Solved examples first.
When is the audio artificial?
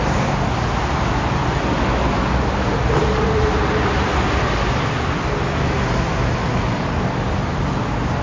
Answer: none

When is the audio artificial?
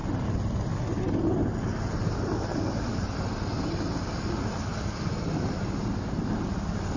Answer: none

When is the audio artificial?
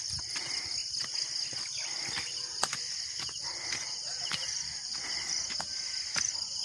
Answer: none